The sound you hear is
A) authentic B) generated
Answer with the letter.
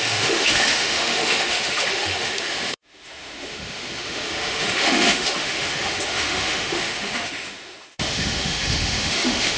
B